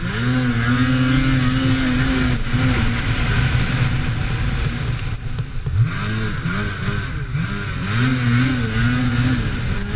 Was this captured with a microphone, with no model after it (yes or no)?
yes